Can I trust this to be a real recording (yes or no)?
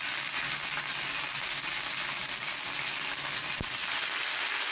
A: yes